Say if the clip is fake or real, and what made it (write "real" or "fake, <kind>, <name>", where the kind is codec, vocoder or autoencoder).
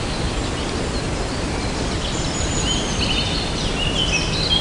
real